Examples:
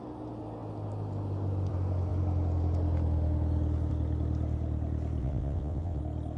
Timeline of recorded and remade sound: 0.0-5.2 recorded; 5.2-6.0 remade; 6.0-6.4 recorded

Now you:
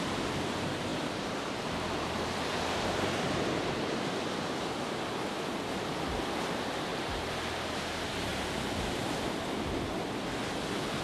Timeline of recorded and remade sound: 0.0-6.9 remade; 6.9-7.8 recorded; 7.8-11.0 remade

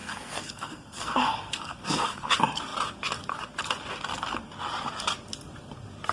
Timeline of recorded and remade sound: 0.0-2.3 remade; 2.3-6.1 recorded

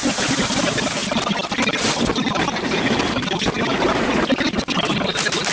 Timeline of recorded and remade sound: 0.0-5.5 recorded

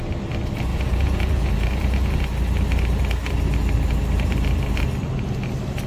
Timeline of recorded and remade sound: 0.0-0.7 recorded; 0.7-2.2 remade; 2.2-5.9 recorded

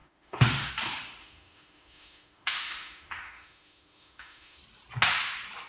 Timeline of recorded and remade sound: 0.0-0.7 remade; 0.7-1.2 recorded; 1.2-4.6 remade; 4.6-5.7 recorded